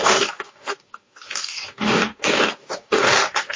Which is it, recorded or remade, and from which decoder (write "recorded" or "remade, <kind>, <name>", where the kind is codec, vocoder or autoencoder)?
remade, codec, DAC